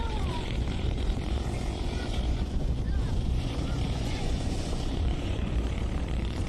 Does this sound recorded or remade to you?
remade